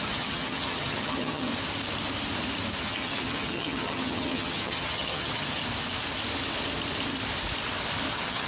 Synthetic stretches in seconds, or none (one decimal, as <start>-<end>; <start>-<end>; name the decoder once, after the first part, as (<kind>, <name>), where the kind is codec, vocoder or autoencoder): 0.0-1.5 (vocoder, HiFi-GAN); 2.8-5.6; 8.1-8.5